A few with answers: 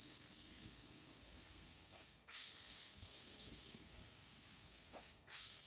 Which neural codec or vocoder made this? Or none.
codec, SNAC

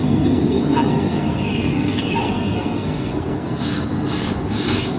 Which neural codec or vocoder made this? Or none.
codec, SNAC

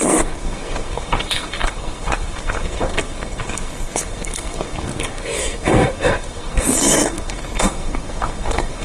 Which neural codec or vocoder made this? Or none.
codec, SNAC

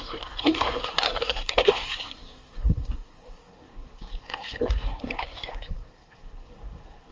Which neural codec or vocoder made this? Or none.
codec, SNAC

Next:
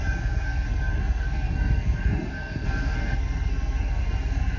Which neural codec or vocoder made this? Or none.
codec, SNAC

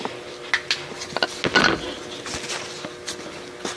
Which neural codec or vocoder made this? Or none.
none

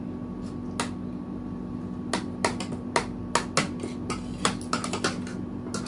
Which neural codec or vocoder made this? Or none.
none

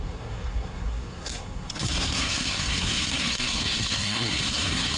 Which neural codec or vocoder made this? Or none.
codec, SNAC